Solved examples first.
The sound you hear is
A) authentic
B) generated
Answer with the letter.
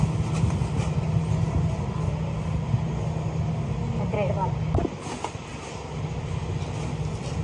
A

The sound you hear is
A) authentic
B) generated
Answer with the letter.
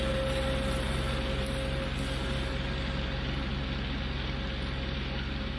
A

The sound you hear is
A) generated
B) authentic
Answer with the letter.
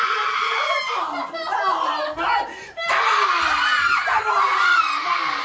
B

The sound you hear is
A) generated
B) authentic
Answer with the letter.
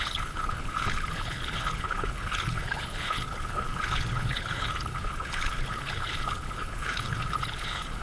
A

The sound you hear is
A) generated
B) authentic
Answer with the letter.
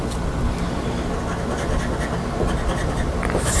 B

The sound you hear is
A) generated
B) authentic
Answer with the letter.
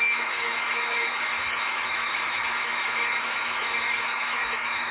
A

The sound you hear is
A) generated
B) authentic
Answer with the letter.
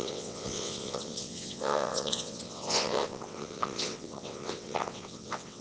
A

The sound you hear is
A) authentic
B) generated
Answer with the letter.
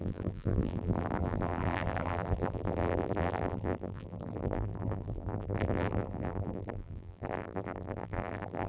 B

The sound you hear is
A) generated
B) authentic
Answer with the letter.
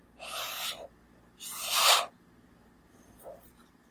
B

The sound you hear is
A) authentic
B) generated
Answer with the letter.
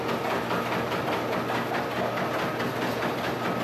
A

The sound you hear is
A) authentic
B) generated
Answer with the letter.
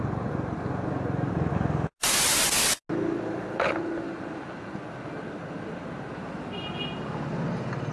A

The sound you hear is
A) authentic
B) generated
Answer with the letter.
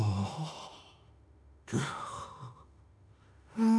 B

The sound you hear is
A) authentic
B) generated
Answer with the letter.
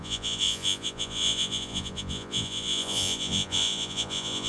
B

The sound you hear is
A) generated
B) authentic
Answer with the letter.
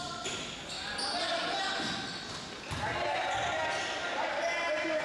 B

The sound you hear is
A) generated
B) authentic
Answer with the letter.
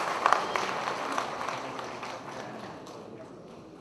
B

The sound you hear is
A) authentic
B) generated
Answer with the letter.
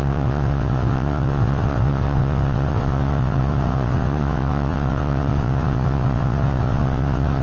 B